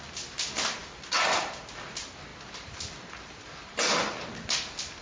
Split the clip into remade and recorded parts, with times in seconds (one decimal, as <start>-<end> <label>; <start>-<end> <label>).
0.0-5.0 recorded